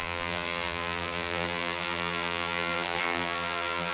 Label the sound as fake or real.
fake